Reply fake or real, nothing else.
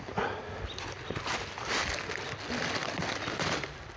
real